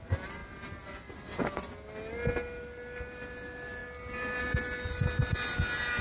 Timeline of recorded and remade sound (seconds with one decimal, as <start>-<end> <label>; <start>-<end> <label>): 0.0-3.8 recorded; 3.8-5.3 remade; 5.3-6.0 recorded